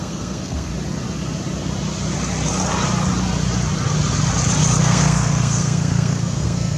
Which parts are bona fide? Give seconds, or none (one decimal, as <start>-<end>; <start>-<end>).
0.7-4.8